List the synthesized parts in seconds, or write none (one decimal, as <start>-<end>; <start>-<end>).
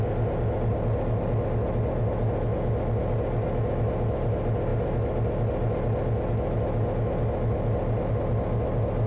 none